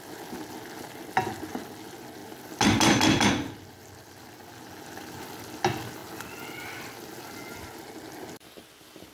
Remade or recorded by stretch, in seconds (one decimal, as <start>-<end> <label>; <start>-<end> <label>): 0.0-9.1 recorded